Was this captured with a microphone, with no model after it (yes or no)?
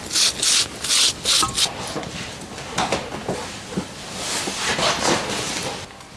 yes